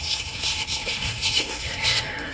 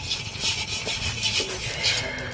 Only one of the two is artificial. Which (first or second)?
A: first